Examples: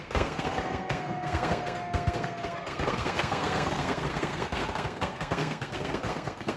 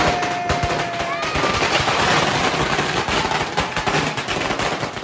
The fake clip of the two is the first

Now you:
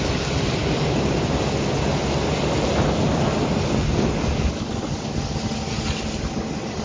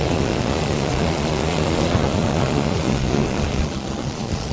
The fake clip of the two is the second